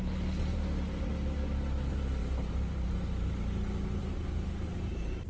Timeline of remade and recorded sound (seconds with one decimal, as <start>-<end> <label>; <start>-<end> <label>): 0.0-0.5 recorded; 0.5-1.1 remade; 1.1-2.2 recorded; 2.2-3.3 remade; 3.3-4.0 recorded; 4.0-5.3 remade